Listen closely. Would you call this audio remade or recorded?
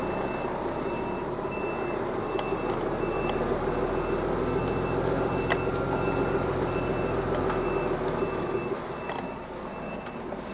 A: recorded